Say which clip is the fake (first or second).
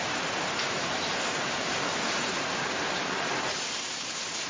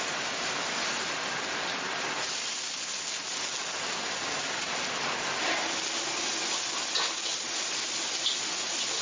first